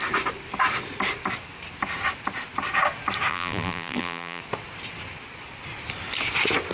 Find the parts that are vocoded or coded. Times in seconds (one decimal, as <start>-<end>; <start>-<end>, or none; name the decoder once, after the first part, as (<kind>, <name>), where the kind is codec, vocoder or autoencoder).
3.3-4.4 (vocoder, BigVGAN v2)